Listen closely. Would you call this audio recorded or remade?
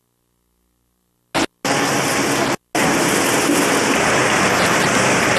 recorded